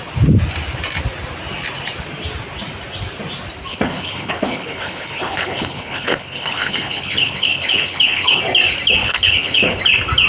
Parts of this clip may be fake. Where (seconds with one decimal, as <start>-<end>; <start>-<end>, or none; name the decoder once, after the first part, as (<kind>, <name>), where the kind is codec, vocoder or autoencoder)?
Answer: 3.7-8.4 (codec, HILCodec); 9.0-9.8